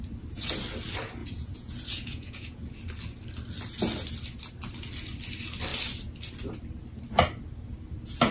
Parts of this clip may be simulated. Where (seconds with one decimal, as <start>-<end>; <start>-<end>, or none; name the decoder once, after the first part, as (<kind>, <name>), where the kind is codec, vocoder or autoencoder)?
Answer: 1.2-2.7 (vocoder, Vocos)